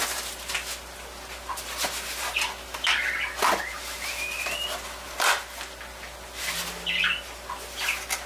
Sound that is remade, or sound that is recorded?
recorded